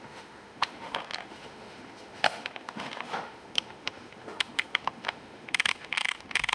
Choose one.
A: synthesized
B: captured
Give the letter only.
A